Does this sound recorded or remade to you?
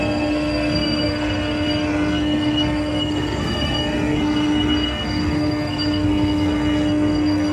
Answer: remade